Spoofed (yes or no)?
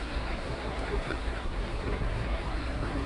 yes